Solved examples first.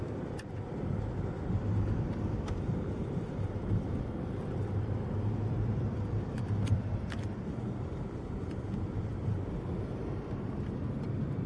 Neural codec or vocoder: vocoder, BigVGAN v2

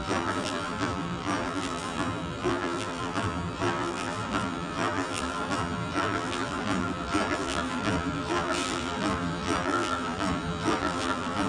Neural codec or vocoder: vocoder, BigVGAN v2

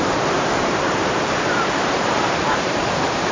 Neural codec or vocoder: vocoder, BigVGAN v2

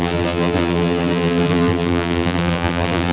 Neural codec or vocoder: vocoder, BigVGAN v2